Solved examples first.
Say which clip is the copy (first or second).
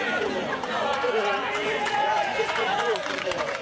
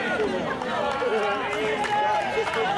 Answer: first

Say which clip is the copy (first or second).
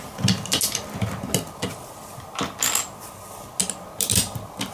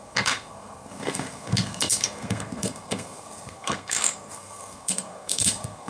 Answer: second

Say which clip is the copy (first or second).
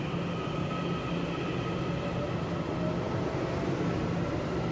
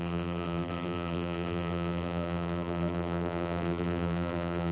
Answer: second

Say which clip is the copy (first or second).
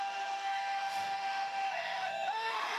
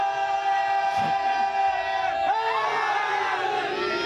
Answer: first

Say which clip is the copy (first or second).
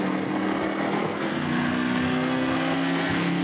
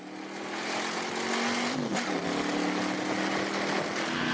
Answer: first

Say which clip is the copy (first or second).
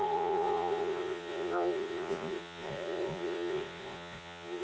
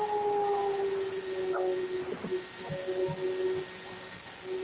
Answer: first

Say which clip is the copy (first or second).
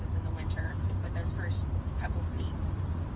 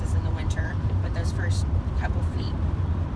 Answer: second